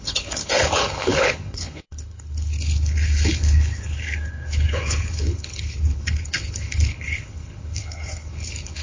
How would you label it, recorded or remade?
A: remade